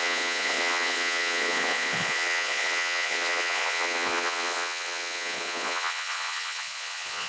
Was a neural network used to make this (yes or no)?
yes